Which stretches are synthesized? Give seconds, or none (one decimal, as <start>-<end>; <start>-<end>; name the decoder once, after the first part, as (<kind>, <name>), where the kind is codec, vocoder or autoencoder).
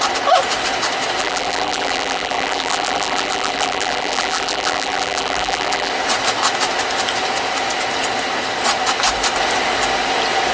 1.2-5.9 (vocoder, BigVGAN v2)